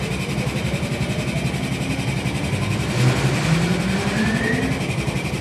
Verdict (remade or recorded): recorded